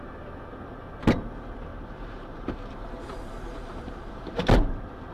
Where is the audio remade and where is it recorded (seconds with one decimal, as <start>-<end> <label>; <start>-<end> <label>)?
0.0-1.7 recorded; 1.7-3.9 remade; 3.9-5.1 recorded